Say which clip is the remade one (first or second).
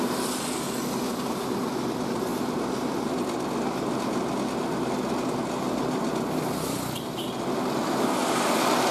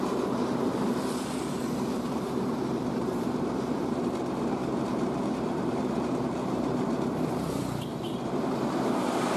second